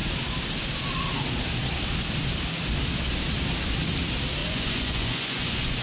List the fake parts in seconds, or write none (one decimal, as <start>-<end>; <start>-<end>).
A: 4.4-5.8